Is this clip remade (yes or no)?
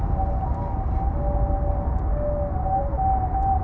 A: no